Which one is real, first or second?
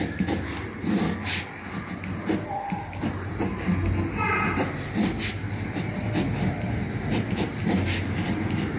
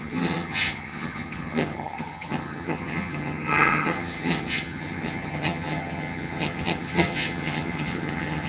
first